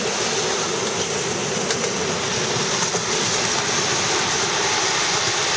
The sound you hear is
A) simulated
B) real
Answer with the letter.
B